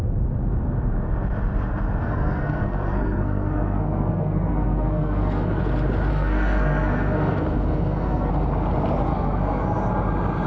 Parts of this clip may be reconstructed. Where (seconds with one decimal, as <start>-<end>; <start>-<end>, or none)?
2.0-5.6; 6.1-8.3; 9.1-9.8